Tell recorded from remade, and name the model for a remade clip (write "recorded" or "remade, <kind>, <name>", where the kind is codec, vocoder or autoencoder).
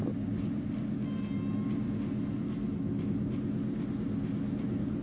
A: recorded